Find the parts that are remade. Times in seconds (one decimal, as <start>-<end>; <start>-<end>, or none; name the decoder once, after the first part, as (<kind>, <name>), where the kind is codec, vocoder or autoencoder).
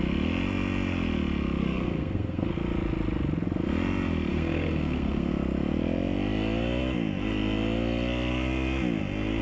1.6-2.5 (codec, SNAC); 4.3-5.3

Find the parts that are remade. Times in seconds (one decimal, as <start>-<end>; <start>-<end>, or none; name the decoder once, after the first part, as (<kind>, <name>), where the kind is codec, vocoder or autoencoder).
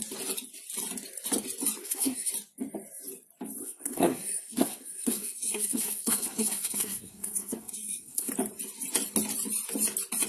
1.8-2.3 (codec, SNAC); 3.6-8.3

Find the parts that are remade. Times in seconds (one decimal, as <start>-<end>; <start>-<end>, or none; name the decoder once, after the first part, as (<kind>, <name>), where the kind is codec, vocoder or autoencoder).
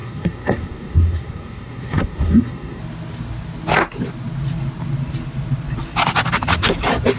0.0-2.8 (codec, SNAC)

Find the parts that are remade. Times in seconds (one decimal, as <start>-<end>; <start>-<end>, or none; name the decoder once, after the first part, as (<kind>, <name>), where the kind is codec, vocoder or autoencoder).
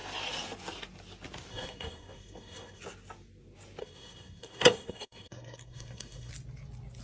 1.5-2.8 (codec, SNAC); 3.8-6.3